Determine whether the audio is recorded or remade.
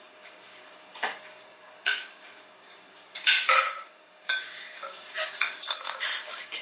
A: remade